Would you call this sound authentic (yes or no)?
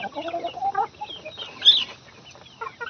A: yes